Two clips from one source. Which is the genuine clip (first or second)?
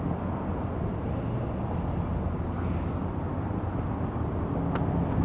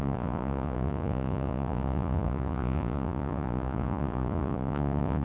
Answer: first